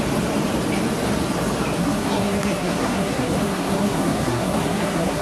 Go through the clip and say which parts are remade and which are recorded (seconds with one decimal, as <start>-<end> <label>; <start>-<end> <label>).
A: 0.0-1.8 recorded; 1.8-5.2 remade

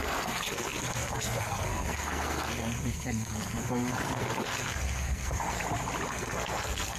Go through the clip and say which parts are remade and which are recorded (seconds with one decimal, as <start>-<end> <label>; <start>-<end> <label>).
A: 0.0-5.6 remade; 5.6-6.1 recorded; 6.1-7.0 remade